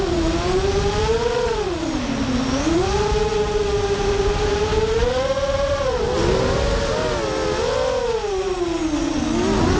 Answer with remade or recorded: recorded